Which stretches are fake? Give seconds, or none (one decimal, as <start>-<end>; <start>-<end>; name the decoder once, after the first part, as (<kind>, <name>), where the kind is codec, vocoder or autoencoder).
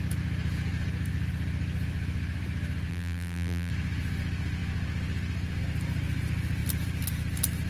2.9-3.7 (vocoder, BigVGAN v2)